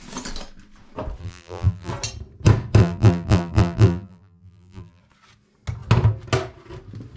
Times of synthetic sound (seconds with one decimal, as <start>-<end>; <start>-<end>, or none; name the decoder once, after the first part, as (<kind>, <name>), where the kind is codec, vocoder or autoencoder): 1.2-1.9 (vocoder, BigVGAN v2); 2.8-5.0